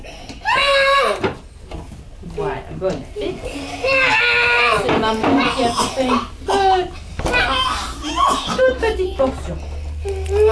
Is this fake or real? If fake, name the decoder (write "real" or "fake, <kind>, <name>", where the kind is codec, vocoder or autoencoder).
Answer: real